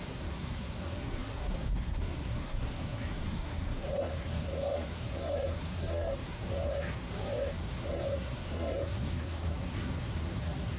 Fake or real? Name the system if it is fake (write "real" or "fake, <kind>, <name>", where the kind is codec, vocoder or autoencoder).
fake, codec, SNAC